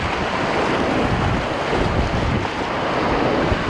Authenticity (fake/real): real